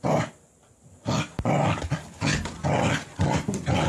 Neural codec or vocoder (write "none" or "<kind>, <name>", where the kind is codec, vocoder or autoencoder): none